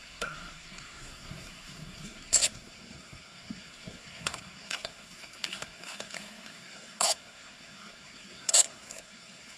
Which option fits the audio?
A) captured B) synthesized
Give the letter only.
B